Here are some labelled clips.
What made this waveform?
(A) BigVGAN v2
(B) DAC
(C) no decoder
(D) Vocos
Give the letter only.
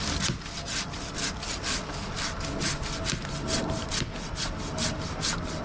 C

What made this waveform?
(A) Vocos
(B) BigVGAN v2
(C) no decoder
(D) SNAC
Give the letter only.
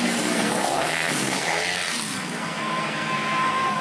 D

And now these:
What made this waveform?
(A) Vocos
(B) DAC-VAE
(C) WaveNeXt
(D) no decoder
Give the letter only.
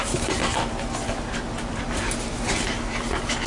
D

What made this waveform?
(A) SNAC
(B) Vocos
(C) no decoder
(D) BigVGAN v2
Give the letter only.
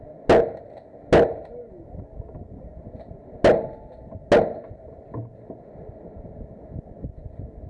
C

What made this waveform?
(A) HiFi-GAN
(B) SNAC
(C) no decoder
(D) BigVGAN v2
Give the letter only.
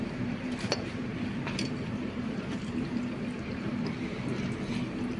D